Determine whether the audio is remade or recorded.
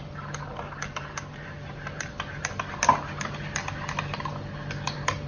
recorded